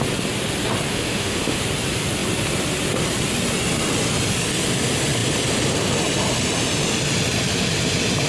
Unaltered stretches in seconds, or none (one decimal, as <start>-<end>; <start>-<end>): 0.0-0.9; 1.6-8.3